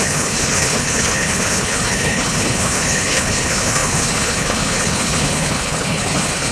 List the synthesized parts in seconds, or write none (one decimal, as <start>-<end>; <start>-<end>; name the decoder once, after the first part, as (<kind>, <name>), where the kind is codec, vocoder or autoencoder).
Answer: 0.0-6.5 (codec, HILCodec)